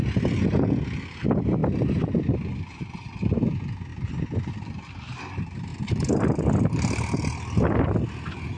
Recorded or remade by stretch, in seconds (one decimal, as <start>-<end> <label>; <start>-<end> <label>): 0.0-8.6 recorded